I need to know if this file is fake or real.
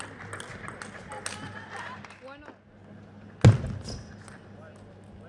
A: real